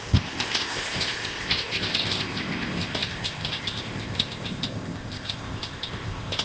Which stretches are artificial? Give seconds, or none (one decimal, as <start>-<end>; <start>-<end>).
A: 0.0-6.4